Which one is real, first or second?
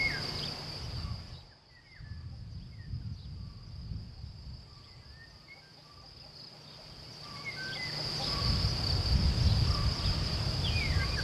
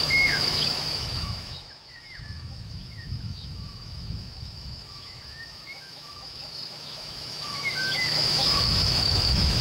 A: first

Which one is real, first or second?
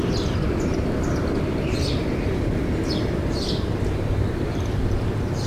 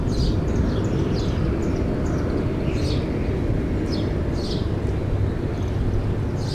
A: second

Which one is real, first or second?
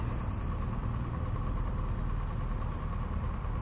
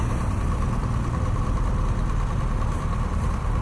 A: first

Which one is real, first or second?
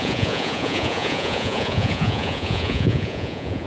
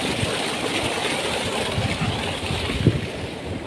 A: second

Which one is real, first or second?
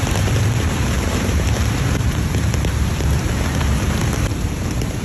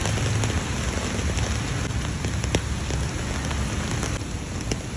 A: second